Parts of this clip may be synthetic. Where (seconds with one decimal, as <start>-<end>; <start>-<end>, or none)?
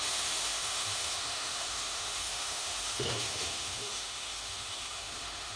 0.0-5.6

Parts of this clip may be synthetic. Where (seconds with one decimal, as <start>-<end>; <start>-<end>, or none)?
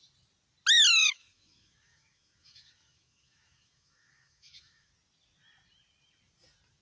1.0-4.9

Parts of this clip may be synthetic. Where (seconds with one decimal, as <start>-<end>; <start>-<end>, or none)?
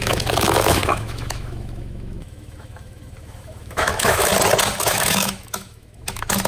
0.0-4.3; 4.8-6.5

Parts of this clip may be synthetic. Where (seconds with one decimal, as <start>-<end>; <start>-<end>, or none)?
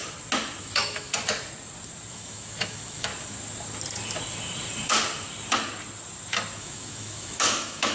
0.6-1.1; 2.1-3.1; 6.6-7.9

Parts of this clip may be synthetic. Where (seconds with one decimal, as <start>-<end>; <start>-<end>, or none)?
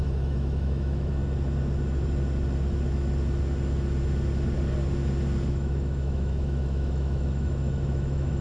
0.0-1.2; 5.5-8.4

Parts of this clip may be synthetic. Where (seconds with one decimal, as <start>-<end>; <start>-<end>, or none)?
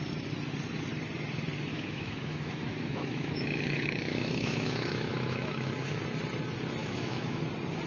1.7-6.0; 6.8-7.4